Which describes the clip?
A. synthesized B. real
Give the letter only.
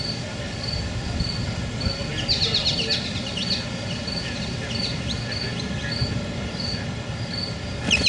B